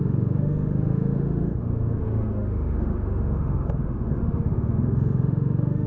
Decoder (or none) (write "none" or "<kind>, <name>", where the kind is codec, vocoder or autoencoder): autoencoder, DAC-VAE